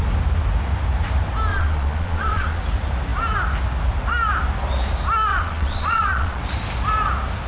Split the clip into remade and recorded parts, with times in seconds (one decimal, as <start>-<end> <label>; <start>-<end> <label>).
0.0-1.5 recorded; 1.5-2.6 remade; 2.6-5.3 recorded; 5.3-6.4 remade; 6.4-7.5 recorded